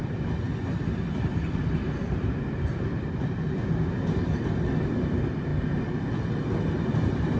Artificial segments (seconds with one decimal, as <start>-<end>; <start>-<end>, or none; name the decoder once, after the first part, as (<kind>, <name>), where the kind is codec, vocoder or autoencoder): 0.0-5.5 (vocoder, BigVGAN v2); 6.6-7.4